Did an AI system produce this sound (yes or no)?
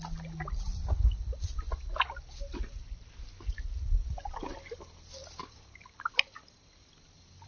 no